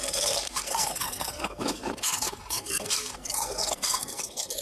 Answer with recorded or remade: remade